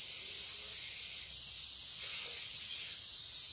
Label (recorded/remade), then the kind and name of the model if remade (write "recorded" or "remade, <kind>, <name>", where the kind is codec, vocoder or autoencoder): recorded